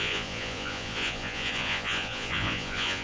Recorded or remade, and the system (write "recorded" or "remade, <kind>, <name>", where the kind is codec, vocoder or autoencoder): remade, vocoder, Vocos